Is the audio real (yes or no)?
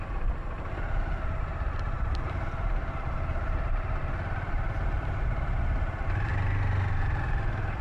yes